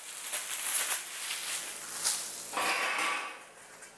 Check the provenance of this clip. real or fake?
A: real